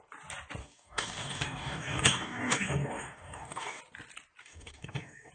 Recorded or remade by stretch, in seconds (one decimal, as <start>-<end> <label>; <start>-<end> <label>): 0.0-0.6 recorded; 0.6-3.8 remade; 3.8-4.4 recorded; 4.4-5.3 remade